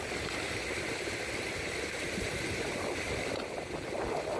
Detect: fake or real real